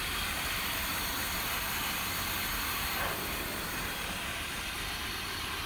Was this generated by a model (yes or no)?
no